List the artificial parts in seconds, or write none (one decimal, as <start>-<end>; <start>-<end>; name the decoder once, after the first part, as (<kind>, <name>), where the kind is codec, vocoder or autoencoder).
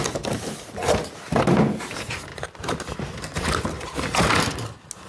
2.3-3.6 (vocoder, BigVGAN v2)